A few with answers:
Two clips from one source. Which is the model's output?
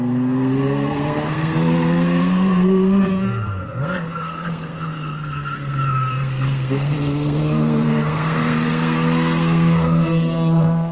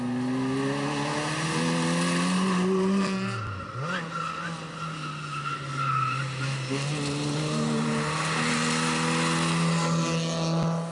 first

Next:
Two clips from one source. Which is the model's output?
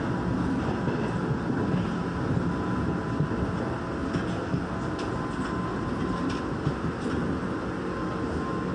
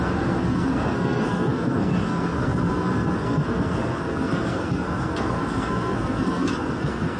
second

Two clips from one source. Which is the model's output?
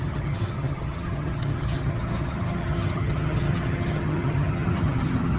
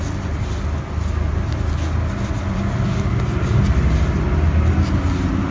first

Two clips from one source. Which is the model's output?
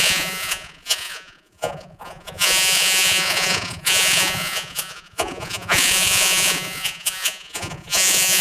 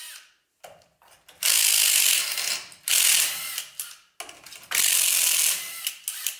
first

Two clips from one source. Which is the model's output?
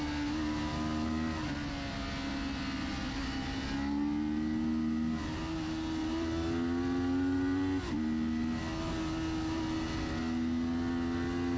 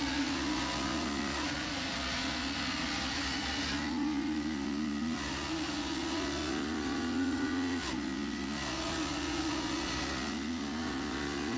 second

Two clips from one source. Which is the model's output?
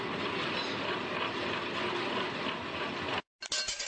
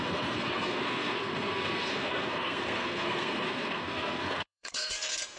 second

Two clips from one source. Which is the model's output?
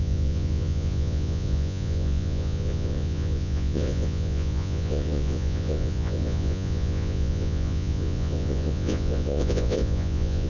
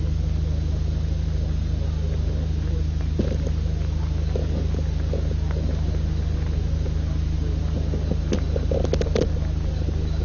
first